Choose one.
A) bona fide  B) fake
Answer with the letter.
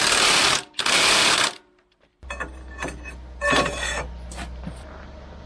A